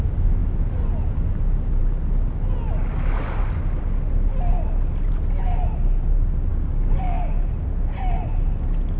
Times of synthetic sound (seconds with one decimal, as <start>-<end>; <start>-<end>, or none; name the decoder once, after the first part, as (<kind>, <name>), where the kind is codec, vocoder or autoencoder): 6.5-7.5 (codec, DAC)